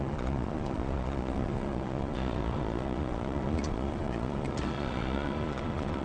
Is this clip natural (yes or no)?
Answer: no